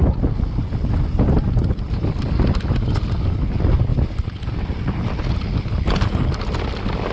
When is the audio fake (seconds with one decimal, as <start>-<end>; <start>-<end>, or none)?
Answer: none